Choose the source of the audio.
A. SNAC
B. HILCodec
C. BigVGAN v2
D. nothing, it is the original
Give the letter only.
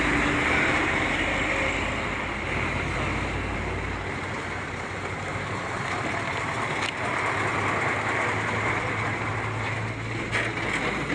D